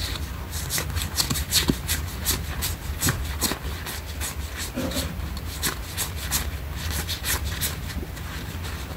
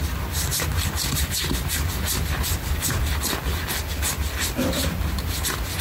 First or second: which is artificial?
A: first